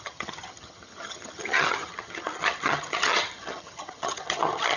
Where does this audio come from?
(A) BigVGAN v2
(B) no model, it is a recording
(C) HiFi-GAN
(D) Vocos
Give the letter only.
C